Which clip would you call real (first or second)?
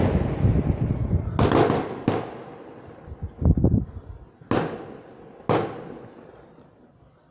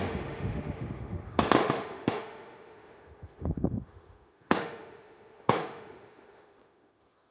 first